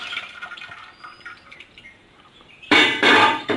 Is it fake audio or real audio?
fake